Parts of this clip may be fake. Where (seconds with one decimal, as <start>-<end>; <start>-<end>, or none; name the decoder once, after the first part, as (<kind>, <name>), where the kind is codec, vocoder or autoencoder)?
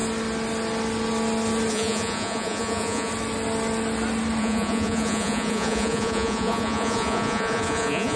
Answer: 1.7-3.1 (vocoder, Vocos); 4.4-8.2